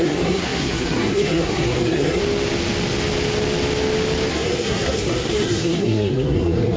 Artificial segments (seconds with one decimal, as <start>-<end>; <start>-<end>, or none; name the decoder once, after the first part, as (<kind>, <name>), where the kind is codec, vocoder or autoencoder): 0.0-2.2 (codec, SNAC); 4.3-6.8